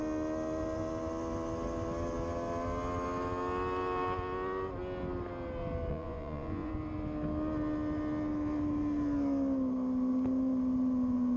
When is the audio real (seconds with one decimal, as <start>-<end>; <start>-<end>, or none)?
0.0-5.9; 6.7-11.4